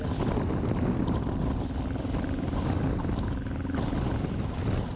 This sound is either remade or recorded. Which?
recorded